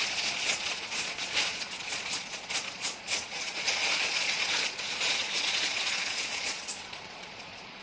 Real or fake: fake